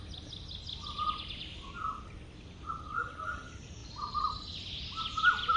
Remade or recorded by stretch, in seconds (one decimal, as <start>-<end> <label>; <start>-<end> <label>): 0.0-5.6 recorded